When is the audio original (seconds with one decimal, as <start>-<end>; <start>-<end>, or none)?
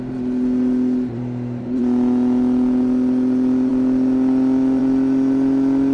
0.0-5.9